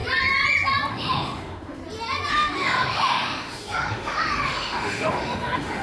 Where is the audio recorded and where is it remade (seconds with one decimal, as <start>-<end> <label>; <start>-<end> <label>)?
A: 0.0-0.9 recorded; 0.9-1.8 remade; 1.8-2.3 recorded; 2.3-5.8 remade